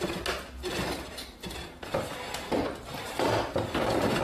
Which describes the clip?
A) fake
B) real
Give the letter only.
B